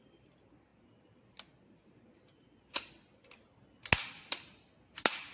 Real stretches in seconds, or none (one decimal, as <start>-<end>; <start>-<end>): 0.0-5.3